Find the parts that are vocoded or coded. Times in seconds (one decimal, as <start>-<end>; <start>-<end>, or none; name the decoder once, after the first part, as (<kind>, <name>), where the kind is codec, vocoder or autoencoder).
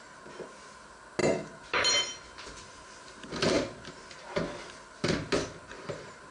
none